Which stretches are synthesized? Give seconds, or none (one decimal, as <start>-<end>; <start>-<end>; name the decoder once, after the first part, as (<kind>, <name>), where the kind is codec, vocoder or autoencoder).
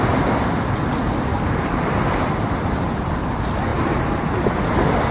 0.0-1.3 (vocoder, BigVGAN v2); 2.4-3.7